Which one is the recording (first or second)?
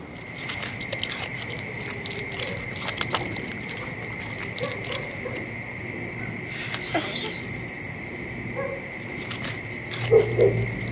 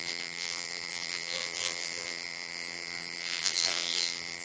first